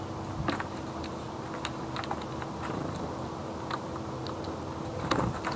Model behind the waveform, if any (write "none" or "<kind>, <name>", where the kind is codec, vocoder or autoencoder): none